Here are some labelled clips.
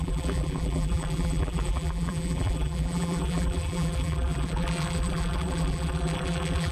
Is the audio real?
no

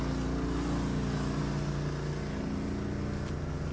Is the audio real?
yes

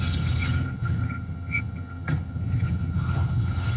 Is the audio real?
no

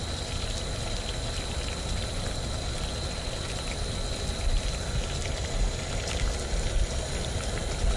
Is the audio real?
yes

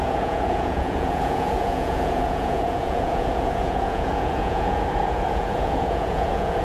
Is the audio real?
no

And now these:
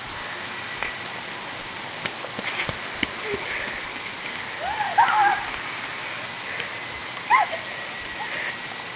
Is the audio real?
yes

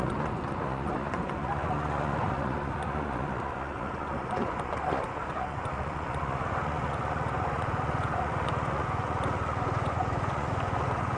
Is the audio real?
no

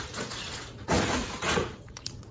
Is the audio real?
no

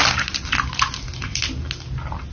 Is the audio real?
yes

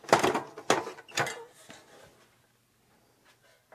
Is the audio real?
yes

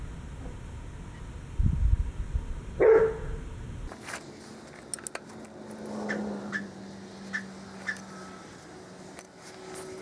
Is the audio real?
yes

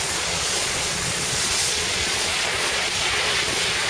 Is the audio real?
no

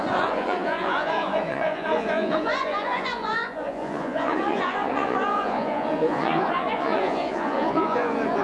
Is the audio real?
no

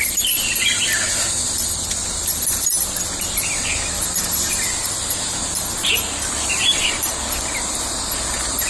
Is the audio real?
yes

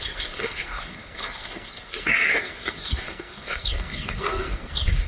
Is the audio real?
no